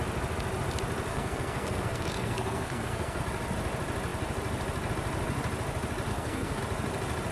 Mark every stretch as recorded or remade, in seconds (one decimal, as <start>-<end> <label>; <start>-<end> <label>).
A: 0.0-1.1 recorded; 1.1-3.2 remade; 3.2-6.1 recorded; 6.1-6.6 remade; 6.6-7.3 recorded

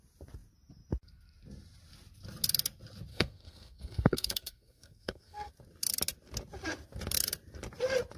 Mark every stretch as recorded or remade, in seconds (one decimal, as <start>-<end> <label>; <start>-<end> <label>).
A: 0.0-3.1 recorded; 3.1-5.5 remade; 5.5-8.2 recorded

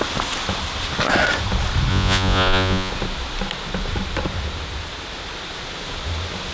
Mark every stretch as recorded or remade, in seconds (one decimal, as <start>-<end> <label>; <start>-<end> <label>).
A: 0.0-1.9 recorded; 1.9-2.9 remade; 2.9-6.5 recorded

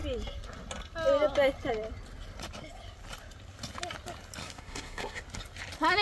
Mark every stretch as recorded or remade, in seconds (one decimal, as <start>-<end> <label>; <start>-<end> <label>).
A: 0.0-4.4 recorded; 4.4-5.2 remade; 5.2-6.0 recorded

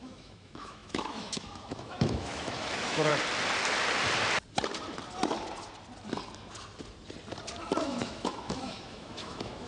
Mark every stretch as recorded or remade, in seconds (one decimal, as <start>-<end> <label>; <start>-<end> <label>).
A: 0.0-3.1 remade; 3.1-7.8 recorded; 7.8-9.7 remade